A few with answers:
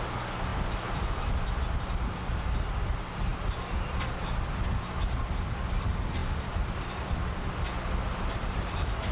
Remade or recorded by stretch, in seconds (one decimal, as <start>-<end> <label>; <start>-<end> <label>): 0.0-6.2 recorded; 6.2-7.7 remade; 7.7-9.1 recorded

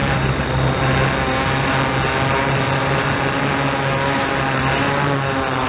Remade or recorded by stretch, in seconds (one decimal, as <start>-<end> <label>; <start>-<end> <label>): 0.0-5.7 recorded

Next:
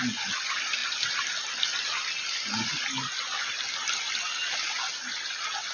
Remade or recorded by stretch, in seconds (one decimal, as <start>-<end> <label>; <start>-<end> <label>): 0.0-5.7 recorded

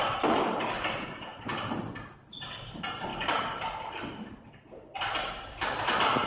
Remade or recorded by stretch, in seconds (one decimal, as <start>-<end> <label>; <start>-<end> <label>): 0.0-6.3 remade

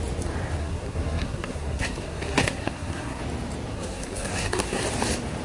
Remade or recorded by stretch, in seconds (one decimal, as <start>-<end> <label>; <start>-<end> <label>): 0.0-0.6 recorded; 0.6-3.2 remade; 3.2-3.7 recorded; 3.7-4.8 remade; 4.8-5.4 recorded

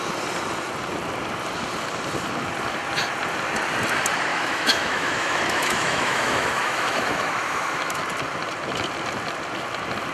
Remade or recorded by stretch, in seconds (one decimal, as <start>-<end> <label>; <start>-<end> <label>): 0.0-4.3 recorded; 4.3-8.0 remade; 8.0-10.1 recorded